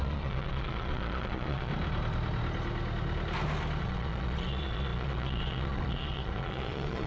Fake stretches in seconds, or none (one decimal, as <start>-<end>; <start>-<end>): 0.0-1.7; 3.8-7.1